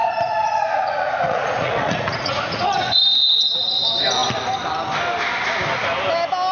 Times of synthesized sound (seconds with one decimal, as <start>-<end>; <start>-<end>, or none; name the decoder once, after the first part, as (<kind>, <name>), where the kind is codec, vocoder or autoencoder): 0.0-3.0 (vocoder, Vocos)